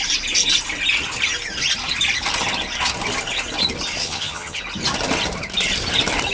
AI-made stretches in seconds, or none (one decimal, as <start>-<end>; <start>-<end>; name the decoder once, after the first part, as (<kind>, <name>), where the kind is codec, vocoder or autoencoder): 4.0-4.6 (vocoder, HiFi-GAN)